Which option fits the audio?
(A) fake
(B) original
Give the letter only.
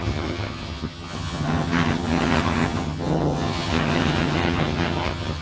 A